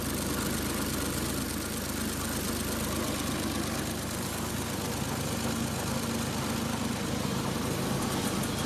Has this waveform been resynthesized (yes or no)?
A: no